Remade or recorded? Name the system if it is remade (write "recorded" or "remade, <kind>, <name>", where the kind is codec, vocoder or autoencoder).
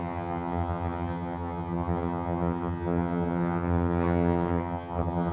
remade, vocoder, HiFi-GAN